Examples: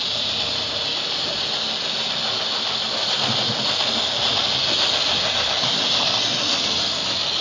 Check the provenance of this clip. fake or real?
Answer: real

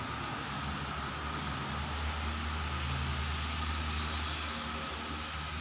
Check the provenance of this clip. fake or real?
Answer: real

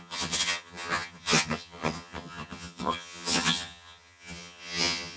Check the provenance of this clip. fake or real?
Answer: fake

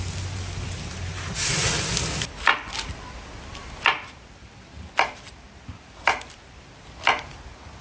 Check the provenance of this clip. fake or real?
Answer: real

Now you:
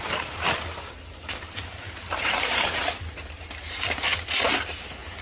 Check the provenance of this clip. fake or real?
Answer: real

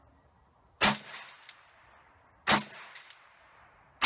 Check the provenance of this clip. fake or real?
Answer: real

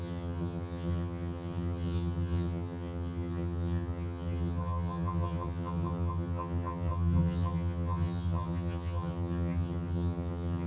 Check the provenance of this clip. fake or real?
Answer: fake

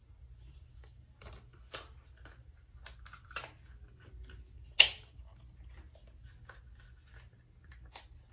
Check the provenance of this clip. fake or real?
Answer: real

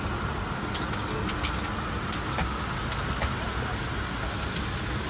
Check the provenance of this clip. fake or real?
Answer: real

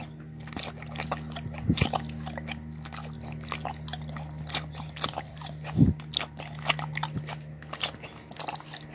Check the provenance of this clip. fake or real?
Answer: real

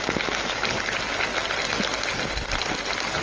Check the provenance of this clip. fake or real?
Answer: real